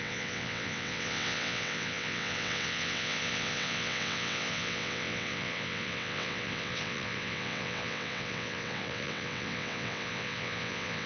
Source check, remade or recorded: remade